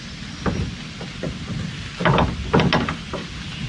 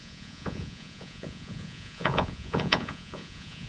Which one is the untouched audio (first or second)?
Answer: first